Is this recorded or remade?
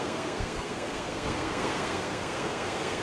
remade